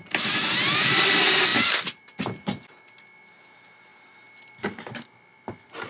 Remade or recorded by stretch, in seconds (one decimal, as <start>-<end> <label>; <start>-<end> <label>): 0.0-5.9 recorded

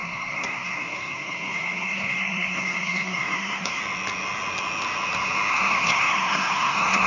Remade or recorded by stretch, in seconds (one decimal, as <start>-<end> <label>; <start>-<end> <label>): 0.0-3.8 remade; 3.8-5.5 recorded; 5.5-7.1 remade

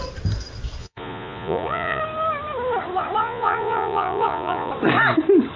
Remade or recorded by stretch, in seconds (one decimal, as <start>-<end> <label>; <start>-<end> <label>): 0.0-0.8 recorded; 0.8-2.0 remade; 2.0-3.2 recorded; 3.2-4.7 remade; 4.7-5.6 recorded

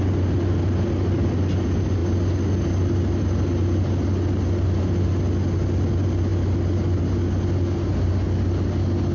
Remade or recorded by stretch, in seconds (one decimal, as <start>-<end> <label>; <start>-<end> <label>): 0.0-9.1 recorded

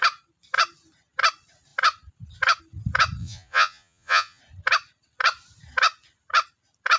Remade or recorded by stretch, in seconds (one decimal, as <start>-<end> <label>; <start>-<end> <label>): 0.0-3.2 recorded; 3.2-4.4 remade; 4.4-7.0 recorded

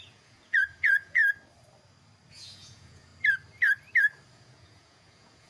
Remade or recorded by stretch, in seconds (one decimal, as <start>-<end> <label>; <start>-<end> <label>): 0.0-1.2 remade; 1.2-2.3 recorded; 2.3-3.1 remade; 3.1-4.3 recorded; 4.3-5.5 remade

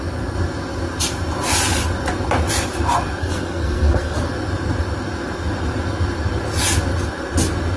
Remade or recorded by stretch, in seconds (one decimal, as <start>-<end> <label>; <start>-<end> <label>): 0.0-3.2 recorded; 3.2-4.3 remade; 4.3-7.8 recorded